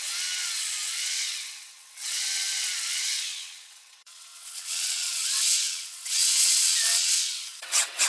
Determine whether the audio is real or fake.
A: fake